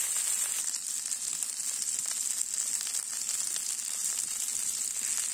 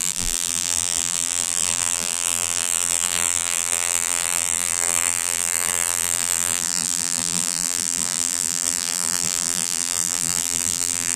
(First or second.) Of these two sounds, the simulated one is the second